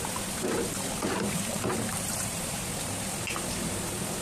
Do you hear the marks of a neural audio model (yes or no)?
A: yes